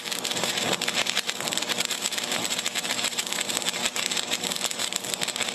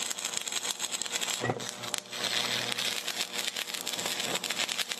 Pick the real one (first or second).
second